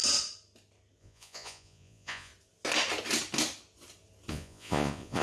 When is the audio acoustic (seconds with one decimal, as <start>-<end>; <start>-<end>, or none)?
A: 0.0-1.0; 2.3-4.3

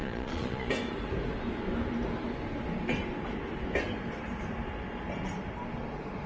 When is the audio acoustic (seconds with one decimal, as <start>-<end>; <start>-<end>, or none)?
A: 0.7-6.3

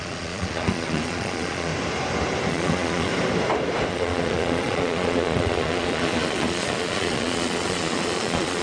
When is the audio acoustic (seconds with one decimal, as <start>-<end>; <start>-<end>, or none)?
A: 1.7-2.5; 3.1-3.9

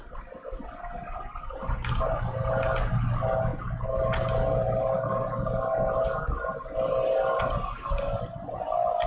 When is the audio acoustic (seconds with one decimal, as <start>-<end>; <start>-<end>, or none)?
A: 0.0-9.1

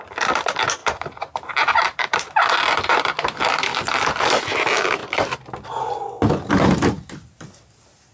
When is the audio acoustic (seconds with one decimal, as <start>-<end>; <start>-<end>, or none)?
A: 0.0-0.8; 2.3-3.7; 4.4-8.1

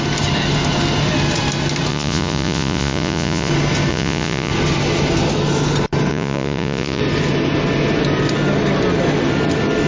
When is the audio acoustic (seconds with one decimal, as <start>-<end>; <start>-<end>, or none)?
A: 0.0-1.9; 3.5-3.9; 4.5-6.1; 7.0-9.9

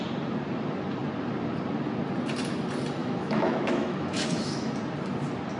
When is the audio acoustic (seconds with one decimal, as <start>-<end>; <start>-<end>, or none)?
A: 0.0-3.0; 4.7-5.6